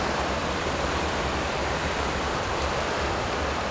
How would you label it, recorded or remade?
remade